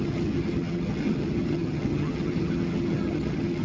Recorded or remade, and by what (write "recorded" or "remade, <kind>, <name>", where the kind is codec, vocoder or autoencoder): remade, vocoder, HiFi-GAN